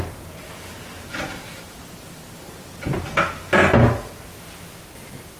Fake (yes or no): no